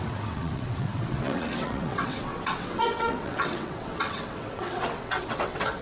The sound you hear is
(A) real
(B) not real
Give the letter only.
B